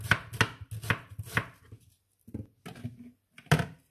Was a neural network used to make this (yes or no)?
no